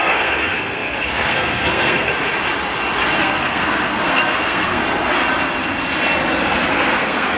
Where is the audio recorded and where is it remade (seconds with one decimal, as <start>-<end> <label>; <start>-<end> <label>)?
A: 0.0-2.1 remade; 2.1-3.2 recorded; 3.2-4.8 remade; 4.8-6.7 recorded; 6.7-7.4 remade